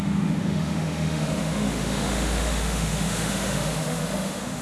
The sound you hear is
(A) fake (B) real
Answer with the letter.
A